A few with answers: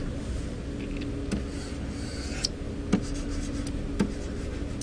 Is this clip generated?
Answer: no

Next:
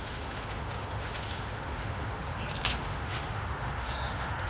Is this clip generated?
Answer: yes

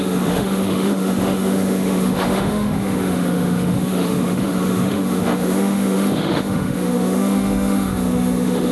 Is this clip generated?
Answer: yes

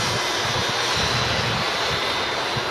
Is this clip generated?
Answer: no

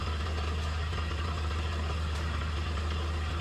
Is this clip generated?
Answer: no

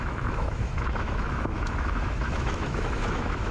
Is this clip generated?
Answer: yes